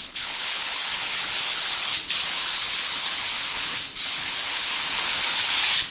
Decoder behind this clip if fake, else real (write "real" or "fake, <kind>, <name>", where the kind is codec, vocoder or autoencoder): fake, codec, HILCodec